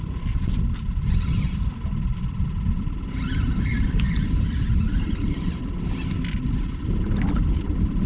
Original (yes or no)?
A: yes